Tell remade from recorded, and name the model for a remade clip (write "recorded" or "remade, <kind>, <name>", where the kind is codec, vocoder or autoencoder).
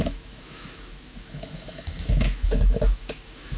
remade, autoencoder, DAC-VAE